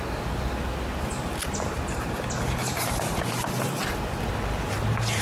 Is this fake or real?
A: real